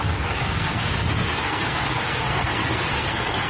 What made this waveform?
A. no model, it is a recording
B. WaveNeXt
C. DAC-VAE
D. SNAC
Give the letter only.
D